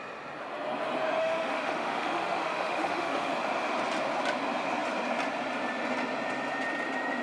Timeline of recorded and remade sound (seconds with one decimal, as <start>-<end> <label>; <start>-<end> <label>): 0.0-1.2 recorded; 1.2-3.3 remade; 3.3-7.2 recorded